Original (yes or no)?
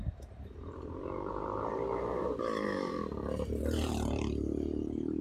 no